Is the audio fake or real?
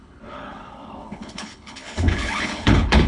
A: fake